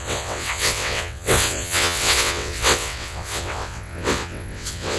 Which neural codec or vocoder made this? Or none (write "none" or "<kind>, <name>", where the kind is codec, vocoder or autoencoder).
vocoder, WaveNeXt